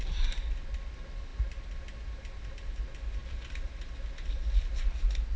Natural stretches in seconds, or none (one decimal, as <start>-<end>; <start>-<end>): 0.0-5.4